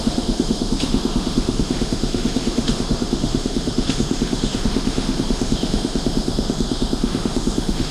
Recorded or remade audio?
remade